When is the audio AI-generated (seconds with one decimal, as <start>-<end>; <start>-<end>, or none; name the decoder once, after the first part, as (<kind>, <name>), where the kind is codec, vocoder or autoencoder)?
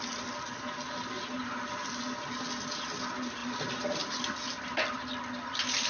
3.4-5.9 (vocoder, BigVGAN v2)